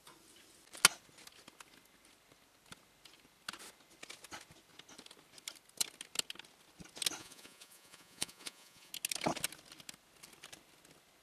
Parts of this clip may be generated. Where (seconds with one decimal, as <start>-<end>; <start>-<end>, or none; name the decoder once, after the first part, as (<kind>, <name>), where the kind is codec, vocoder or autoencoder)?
7.2-8.9 (vocoder, Vocos)

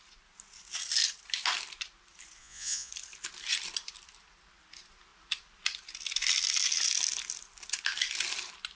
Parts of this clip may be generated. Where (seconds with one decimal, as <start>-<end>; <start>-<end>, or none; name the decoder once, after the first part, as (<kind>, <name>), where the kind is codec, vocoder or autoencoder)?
2.4-2.9 (vocoder, Vocos)

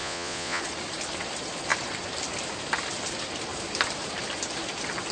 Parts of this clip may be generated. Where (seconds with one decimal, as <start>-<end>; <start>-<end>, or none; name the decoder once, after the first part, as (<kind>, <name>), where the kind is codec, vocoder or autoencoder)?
0.0-0.6 (vocoder, Vocos)

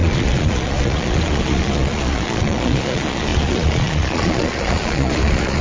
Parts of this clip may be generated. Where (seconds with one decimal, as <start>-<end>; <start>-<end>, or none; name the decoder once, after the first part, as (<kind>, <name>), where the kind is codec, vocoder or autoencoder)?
0.0-5.6 (vocoder, Vocos)

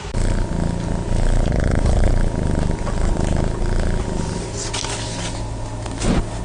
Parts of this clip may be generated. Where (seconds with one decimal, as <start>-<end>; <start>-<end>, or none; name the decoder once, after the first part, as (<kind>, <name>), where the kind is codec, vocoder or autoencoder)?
1.5-2.1 (vocoder, Vocos)

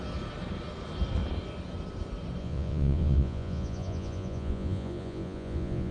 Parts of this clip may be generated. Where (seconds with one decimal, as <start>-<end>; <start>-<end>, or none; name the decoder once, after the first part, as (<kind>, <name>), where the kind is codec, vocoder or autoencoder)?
2.4-5.9 (vocoder, Vocos)

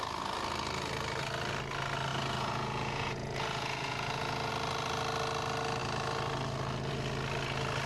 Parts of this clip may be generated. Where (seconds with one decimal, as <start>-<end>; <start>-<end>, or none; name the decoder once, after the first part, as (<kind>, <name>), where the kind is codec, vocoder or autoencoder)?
2.1-4.5 (vocoder, Vocos)